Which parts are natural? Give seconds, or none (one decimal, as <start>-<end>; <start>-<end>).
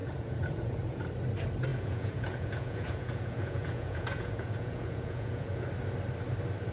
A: 1.0-1.7; 5.7-6.7